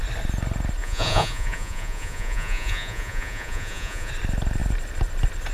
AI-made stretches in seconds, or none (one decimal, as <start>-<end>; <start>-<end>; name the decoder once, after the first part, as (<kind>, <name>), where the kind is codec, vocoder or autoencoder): 0.8-4.1 (vocoder, Vocos)

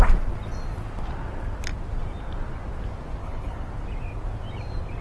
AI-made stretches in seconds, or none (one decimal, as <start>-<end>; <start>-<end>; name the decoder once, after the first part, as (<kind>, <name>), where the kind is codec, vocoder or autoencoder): 3.2-3.7 (codec, HILCodec)

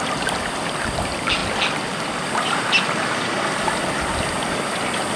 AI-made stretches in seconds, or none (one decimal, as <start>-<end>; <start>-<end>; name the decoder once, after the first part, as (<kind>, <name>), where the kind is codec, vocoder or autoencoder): none

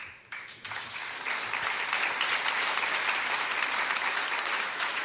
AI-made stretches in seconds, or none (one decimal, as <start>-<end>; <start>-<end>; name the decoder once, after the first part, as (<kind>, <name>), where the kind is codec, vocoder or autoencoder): 0.0-1.0 (autoencoder, DAC-VAE); 4.0-5.0

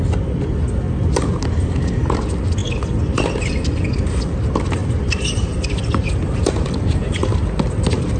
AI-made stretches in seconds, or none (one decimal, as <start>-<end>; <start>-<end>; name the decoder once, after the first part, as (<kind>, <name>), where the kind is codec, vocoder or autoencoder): 4.8-5.8 (vocoder, BigVGAN v2)

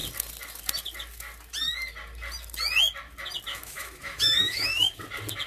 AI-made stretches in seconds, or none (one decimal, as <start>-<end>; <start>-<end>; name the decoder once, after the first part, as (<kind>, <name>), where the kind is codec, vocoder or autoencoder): 3.5-5.0 (autoencoder, DAC-VAE)

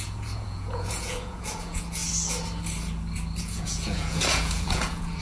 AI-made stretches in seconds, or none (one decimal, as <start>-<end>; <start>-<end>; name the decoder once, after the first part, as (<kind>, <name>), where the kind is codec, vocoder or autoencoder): 0.0-2.0 (vocoder, Vocos); 3.4-5.2

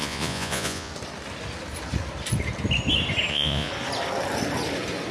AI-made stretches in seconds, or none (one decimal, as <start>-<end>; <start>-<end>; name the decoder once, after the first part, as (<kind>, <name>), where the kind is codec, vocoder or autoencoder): 0.0-0.9 (vocoder, Vocos); 3.3-3.7